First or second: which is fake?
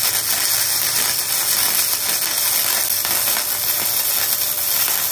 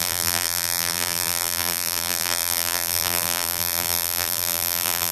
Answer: second